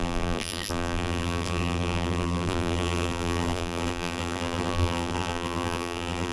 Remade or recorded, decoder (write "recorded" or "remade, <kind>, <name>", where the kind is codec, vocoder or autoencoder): remade, vocoder, BigVGAN v2